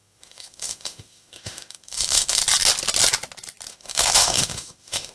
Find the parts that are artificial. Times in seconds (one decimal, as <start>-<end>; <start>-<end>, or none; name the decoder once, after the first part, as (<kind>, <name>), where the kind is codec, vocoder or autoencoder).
0.0-2.4 (autoencoder, DAC-VAE); 3.7-5.1